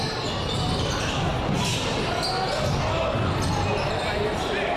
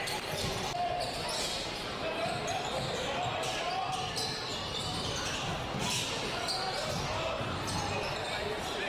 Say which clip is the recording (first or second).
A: first